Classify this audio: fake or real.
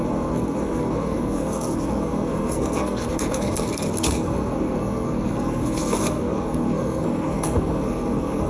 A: fake